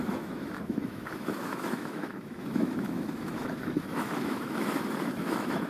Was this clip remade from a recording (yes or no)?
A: yes